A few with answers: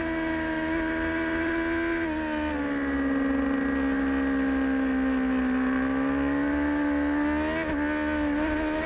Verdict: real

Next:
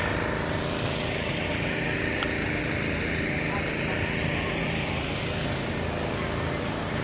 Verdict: real